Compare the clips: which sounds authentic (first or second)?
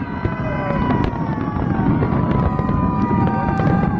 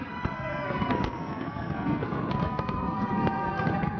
first